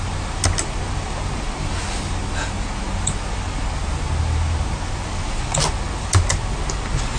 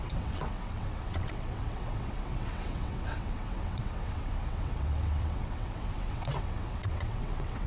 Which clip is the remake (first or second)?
second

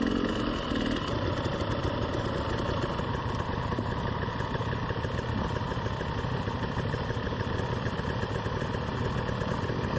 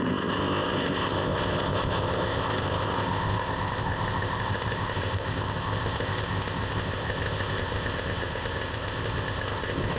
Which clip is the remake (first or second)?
second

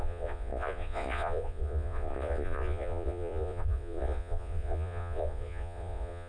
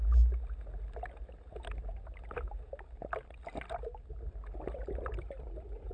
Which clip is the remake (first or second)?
first